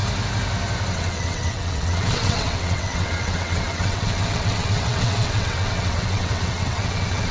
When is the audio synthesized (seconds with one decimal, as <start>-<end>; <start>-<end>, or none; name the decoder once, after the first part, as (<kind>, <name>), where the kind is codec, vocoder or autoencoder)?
0.9-7.3 (vocoder, WaveNeXt)